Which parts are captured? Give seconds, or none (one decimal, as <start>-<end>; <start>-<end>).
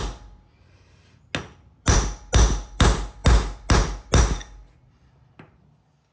0.0-6.1